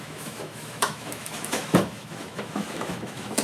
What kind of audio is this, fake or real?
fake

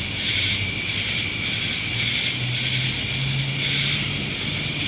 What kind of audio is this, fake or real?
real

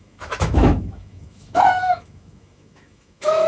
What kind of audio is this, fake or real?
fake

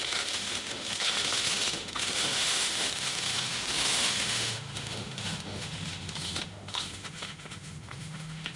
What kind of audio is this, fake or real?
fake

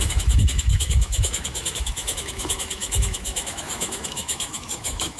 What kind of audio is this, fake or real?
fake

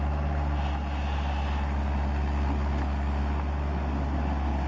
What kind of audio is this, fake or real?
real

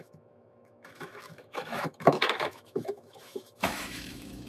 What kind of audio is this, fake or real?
fake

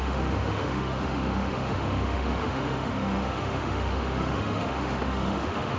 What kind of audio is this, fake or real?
fake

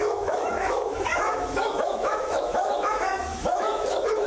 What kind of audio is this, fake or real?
fake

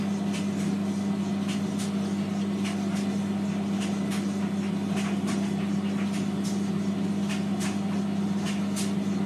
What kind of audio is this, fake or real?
real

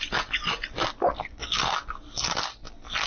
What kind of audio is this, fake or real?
real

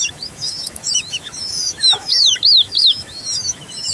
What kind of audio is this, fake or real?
fake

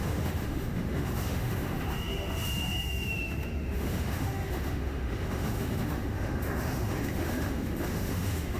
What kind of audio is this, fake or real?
fake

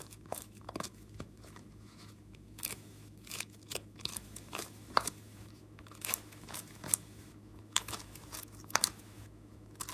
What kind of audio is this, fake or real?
fake